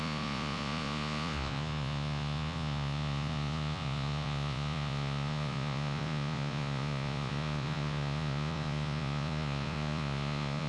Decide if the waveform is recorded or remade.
remade